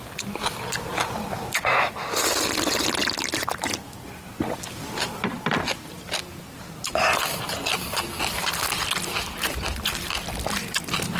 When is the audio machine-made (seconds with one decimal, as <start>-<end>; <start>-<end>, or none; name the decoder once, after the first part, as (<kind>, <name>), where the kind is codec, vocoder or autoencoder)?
4.8-6.9 (vocoder, BigVGAN v2)